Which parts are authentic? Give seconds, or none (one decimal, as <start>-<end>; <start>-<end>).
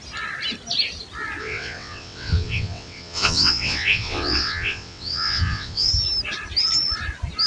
0.0-1.4; 5.9-7.5